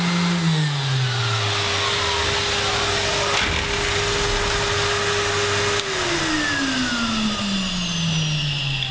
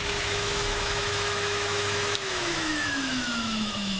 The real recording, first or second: first